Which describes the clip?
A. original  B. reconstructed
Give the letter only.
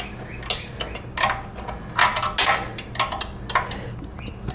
A